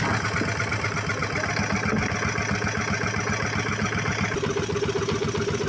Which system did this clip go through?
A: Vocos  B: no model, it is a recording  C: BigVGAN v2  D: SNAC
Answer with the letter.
B